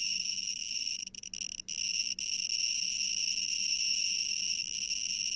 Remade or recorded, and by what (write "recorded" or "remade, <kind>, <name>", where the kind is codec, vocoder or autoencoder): recorded